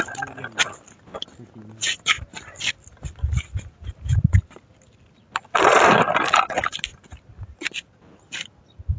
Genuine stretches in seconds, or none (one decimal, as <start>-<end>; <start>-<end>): 0.0-9.0